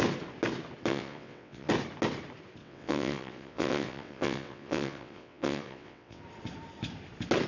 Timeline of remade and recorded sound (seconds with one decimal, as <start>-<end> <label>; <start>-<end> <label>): 0.0-0.9 recorded; 0.9-1.7 remade; 1.7-2.6 recorded; 2.6-6.2 remade; 6.2-7.5 recorded

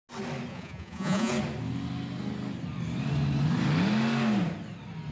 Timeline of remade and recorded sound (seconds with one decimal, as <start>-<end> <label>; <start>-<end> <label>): 0.0-0.5 recorded; 0.5-1.3 remade; 1.3-5.1 recorded

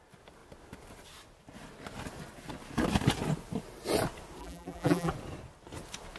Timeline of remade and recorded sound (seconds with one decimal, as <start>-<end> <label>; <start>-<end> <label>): 0.0-4.4 recorded; 4.4-5.1 remade; 5.1-6.2 recorded

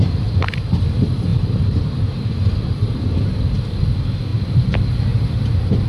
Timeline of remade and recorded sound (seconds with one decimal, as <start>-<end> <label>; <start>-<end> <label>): 0.0-5.9 remade

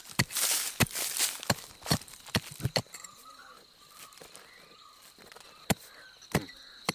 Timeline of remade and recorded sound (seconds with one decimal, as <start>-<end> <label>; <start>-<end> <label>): 0.0-6.9 recorded

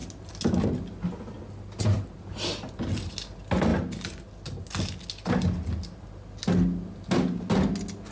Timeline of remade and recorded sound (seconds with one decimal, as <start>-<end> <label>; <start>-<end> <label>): 0.0-8.1 recorded

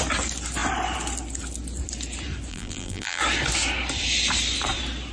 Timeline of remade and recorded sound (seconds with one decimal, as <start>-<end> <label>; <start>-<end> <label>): 0.0-2.5 recorded; 2.5-3.2 remade; 3.2-5.1 recorded

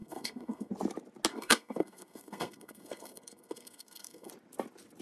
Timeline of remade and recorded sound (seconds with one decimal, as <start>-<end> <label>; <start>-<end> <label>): 0.0-0.7 remade; 0.7-1.3 recorded; 1.3-4.3 remade; 4.3-5.0 recorded